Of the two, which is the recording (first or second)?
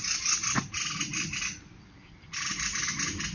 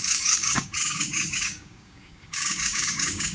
first